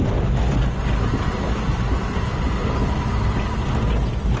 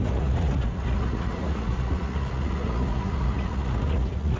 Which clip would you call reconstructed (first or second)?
second